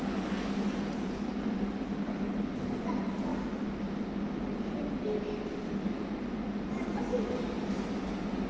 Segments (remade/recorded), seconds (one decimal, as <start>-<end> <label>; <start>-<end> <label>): 0.0-8.5 recorded